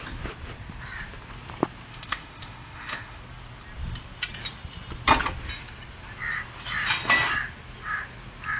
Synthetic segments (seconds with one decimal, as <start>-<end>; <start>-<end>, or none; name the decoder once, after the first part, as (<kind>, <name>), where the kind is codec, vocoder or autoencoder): 1.9-3.2 (autoencoder, DAC-VAE)